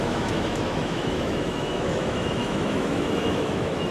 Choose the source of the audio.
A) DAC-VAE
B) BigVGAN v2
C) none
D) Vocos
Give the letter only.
A